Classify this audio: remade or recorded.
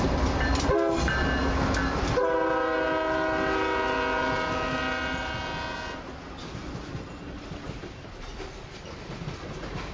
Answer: recorded